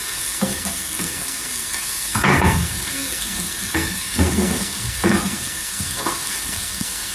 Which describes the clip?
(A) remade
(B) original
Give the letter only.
A